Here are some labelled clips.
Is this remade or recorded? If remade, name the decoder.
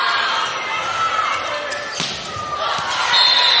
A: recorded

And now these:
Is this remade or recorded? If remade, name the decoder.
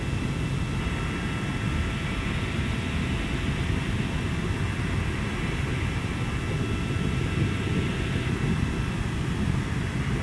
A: recorded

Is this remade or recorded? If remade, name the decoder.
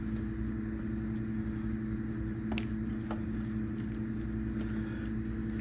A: recorded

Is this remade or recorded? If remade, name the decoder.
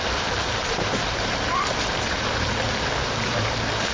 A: remade, vocoder, BigVGAN v2